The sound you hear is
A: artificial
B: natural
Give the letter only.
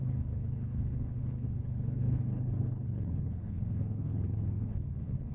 A